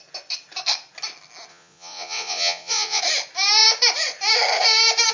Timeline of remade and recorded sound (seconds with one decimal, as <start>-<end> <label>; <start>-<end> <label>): 0.0-1.5 recorded; 1.5-3.0 remade; 3.0-5.1 recorded